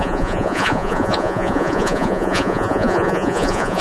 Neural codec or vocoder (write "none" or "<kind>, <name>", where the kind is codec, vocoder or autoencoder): vocoder, Vocos